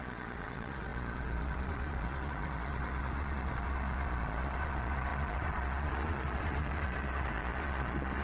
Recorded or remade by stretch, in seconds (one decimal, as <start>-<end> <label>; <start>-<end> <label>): 0.0-8.2 remade